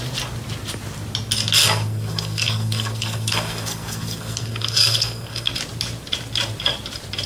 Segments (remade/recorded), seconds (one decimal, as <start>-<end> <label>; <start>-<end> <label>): 0.0-1.6 recorded; 1.6-5.5 remade; 5.5-7.3 recorded